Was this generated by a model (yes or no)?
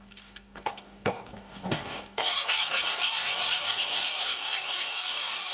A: yes